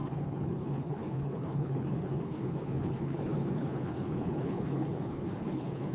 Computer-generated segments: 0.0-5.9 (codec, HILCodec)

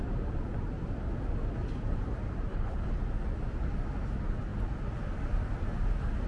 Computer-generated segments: 2.5-3.0 (codec, HILCodec)

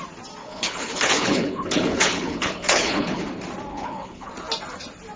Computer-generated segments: 0.4-3.2 (codec, HILCodec); 3.7-4.3

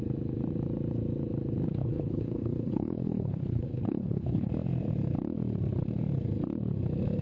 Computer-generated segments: 1.8-4.5 (codec, HILCodec)

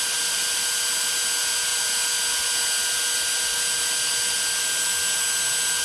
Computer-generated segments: none